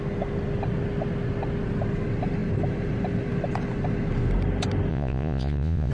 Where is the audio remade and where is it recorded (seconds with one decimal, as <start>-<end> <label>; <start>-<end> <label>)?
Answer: 0.0-4.9 recorded; 4.9-5.9 remade